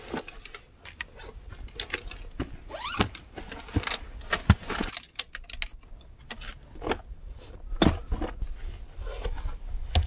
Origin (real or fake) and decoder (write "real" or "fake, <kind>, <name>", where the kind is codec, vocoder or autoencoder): real